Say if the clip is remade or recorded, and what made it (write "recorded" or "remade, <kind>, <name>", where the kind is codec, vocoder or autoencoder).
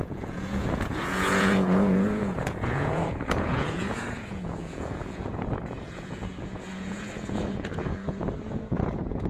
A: remade, vocoder, Vocos